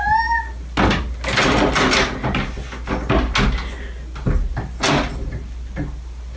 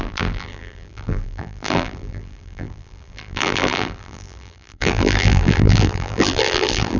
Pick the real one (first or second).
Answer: first